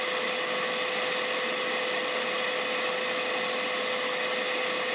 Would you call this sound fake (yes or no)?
no